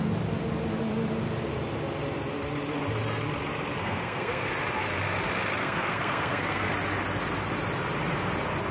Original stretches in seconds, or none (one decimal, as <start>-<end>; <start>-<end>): 0.0-3.8; 4.5-5.6; 6.7-8.7